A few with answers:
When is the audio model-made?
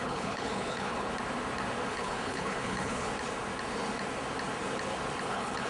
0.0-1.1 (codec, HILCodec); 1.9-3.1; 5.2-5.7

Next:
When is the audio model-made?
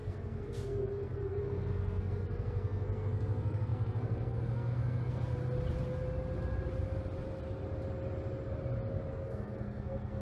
0.0-5.3 (codec, SNAC); 9.1-10.2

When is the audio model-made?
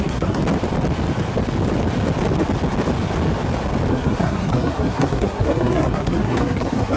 0.0-0.4 (codec, SNAC); 3.9-7.0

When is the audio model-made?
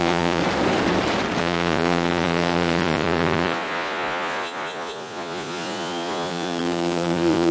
0.0-0.4 (vocoder, Vocos); 1.4-7.5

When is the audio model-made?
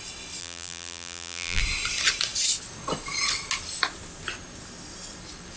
0.4-1.6 (vocoder, BigVGAN v2)